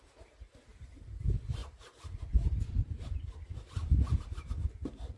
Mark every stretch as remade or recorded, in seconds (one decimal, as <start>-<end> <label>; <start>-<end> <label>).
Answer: 0.0-5.2 recorded